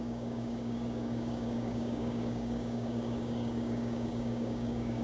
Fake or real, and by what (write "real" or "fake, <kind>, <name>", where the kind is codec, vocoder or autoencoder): fake, codec, DAC